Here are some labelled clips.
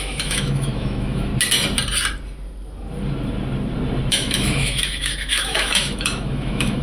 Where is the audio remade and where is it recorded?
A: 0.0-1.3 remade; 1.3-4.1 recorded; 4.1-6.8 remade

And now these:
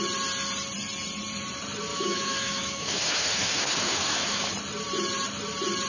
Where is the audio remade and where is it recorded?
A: 0.0-1.9 recorded; 1.9-4.5 remade; 4.5-5.9 recorded

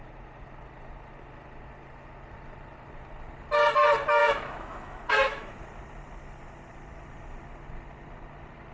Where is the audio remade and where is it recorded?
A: 0.0-4.2 recorded; 4.2-5.6 remade; 5.6-8.7 recorded

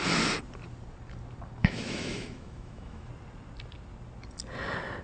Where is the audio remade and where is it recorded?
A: 0.0-1.6 recorded; 1.6-3.1 remade; 3.1-5.0 recorded

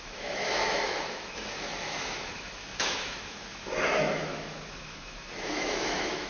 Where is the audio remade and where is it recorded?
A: 0.0-6.3 remade